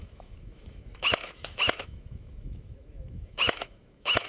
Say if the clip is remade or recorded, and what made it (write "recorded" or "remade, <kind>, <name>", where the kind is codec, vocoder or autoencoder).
remade, autoencoder, DAC-VAE